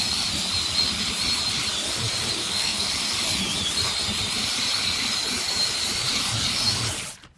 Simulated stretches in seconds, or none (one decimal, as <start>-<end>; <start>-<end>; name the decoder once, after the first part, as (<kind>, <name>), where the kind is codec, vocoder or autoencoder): 2.4-2.9 (codec, SNAC)